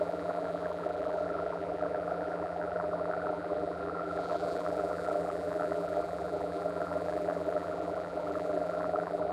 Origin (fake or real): fake